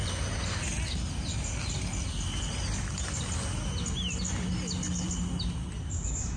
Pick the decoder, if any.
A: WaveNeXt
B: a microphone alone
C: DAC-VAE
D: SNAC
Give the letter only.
B